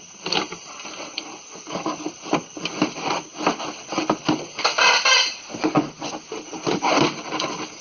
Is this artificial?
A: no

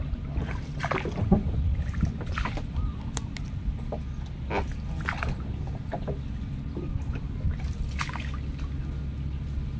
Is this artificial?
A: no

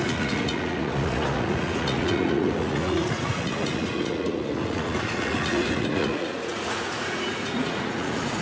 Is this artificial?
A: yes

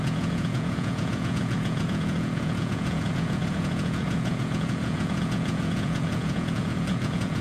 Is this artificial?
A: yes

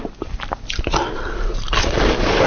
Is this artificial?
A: no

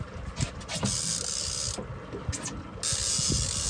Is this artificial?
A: no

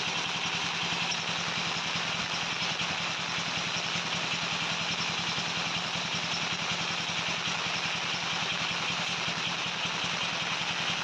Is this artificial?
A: no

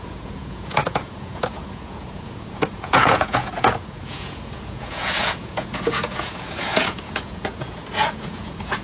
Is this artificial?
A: yes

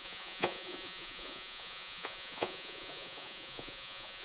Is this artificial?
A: yes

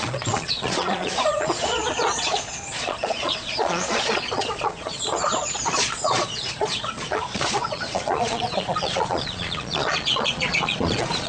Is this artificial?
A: yes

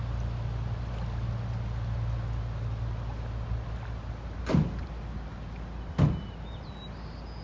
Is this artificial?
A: no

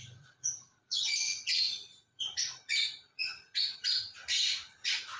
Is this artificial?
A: yes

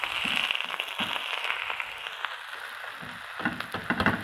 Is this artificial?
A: no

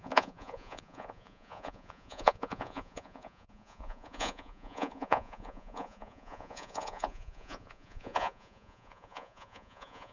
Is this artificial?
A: yes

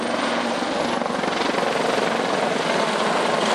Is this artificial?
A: no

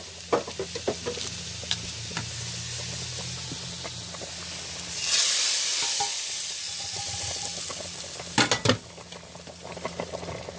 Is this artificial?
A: no